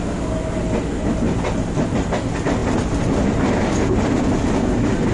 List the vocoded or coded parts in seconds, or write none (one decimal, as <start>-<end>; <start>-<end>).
none